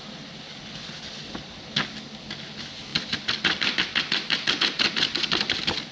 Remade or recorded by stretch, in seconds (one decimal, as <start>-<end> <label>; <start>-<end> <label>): 0.0-1.4 remade; 1.4-2.9 recorded; 2.9-4.6 remade; 4.6-5.9 recorded